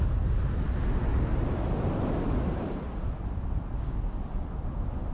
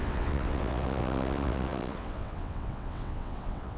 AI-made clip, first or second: second